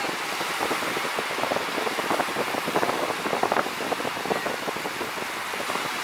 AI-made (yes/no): no